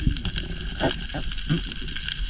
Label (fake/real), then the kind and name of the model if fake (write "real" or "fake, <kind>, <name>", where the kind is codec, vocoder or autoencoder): real